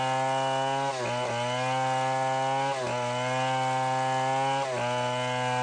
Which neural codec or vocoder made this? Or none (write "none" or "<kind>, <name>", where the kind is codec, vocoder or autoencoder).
none